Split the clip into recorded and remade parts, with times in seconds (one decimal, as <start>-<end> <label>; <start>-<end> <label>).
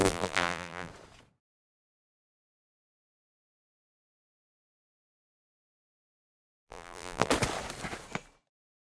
0.0-0.9 remade; 0.9-3.8 recorded; 3.8-7.3 remade; 7.3-9.0 recorded